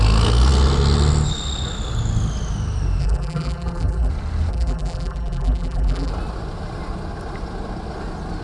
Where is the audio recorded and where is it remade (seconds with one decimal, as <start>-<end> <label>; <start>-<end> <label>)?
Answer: 0.0-3.0 recorded; 3.0-4.1 remade; 4.1-4.5 recorded; 4.5-6.1 remade; 6.1-8.4 recorded